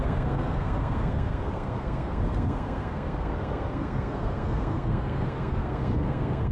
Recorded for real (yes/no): no